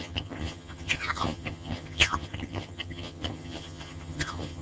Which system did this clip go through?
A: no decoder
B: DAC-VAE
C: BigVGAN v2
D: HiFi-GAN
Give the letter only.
D